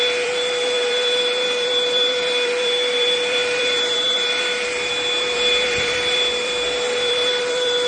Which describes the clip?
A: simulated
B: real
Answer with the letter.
A